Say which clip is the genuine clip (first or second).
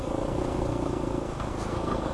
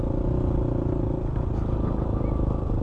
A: second